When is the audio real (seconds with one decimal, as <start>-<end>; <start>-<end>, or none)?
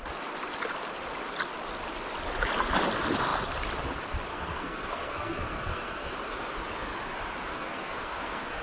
0.0-4.3; 6.1-7.5